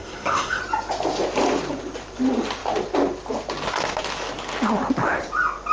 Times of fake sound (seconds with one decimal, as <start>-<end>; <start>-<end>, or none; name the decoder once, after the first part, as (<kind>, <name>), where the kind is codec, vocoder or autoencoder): 0.0-0.6 (codec, SNAC)